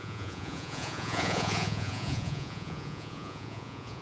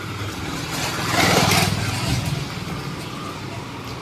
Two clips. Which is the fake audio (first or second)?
first